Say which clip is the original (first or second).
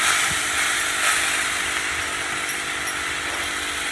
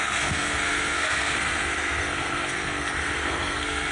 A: first